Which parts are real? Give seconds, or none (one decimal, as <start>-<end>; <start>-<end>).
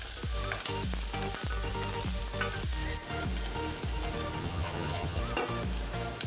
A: 0.0-4.4; 5.2-6.3